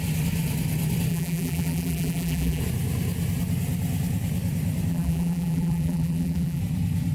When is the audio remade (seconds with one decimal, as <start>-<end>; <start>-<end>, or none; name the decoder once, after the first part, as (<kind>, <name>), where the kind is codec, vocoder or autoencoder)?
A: 1.1-2.6 (vocoder, BigVGAN v2); 4.9-6.6